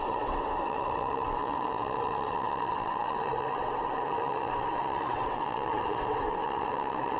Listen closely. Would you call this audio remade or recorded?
remade